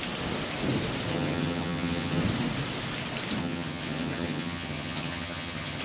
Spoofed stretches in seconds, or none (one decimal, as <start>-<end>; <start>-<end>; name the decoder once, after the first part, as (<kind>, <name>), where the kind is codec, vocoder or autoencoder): 1.1-2.2 (vocoder, HiFi-GAN); 3.4-5.8